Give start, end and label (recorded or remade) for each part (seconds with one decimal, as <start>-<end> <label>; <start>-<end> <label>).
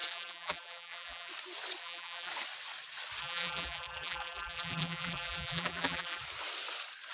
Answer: 0.0-1.3 remade; 1.3-1.8 recorded; 1.8-2.3 remade; 2.3-3.2 recorded; 3.2-6.2 remade; 6.2-7.1 recorded